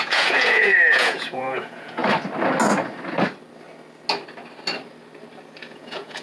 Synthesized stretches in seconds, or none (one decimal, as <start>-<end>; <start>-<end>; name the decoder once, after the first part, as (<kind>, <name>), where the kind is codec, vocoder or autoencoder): 0.0-2.0 (vocoder, Vocos); 5.7-6.2